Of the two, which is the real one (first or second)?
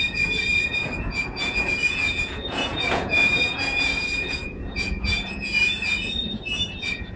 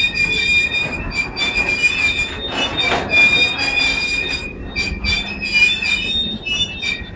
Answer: second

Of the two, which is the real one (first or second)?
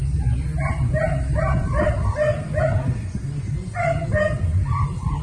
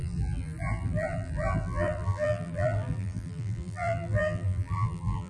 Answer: first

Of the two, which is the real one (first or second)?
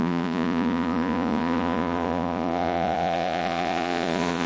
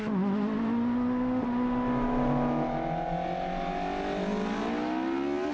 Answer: second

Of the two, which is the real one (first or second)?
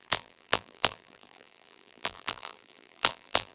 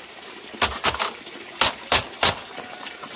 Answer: second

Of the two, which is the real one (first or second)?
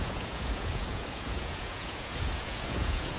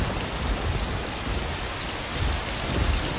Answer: second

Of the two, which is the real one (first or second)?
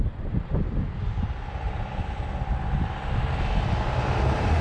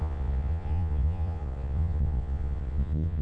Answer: first